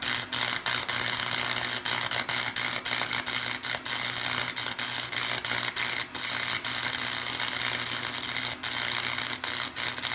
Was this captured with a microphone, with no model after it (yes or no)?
yes